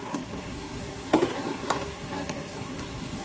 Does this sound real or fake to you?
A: fake